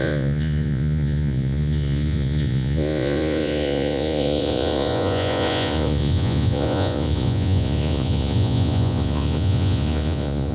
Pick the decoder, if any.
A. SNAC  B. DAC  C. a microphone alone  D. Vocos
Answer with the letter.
D